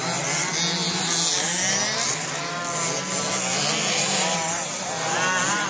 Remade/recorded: recorded